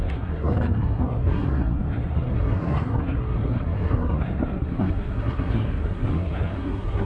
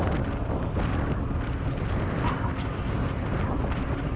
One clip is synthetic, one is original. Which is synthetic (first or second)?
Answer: first